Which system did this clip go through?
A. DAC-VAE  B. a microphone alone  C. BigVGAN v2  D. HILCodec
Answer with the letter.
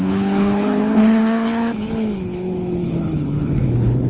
D